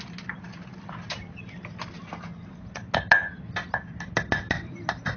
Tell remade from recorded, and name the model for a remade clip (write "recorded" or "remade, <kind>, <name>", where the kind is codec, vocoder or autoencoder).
recorded